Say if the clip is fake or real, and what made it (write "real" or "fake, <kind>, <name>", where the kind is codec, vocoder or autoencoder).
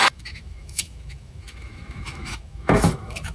fake, autoencoder, DAC-VAE